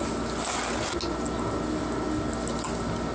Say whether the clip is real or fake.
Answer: real